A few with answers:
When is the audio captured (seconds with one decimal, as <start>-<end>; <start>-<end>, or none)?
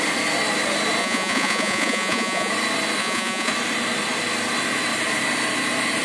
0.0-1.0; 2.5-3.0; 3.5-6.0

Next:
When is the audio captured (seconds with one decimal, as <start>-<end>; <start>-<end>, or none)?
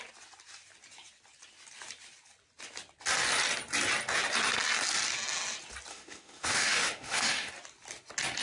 0.0-5.9; 7.5-8.4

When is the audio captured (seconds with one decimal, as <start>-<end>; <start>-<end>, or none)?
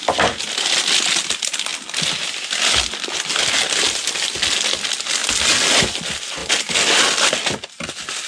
0.0-8.3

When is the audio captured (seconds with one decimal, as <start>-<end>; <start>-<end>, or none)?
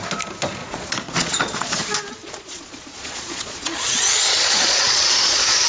0.0-0.6; 1.8-2.2